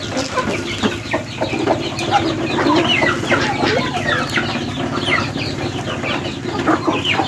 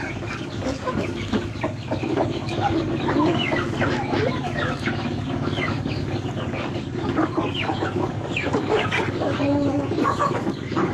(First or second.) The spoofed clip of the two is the second